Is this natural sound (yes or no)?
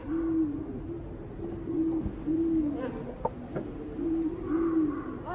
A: yes